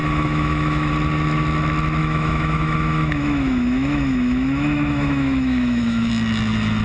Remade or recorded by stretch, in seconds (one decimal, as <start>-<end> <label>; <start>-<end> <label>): 0.0-0.9 remade; 0.9-2.0 recorded; 2.0-6.1 remade; 6.1-6.8 recorded